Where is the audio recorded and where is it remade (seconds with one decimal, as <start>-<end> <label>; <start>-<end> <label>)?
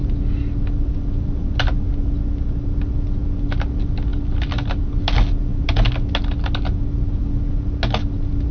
0.0-8.5 recorded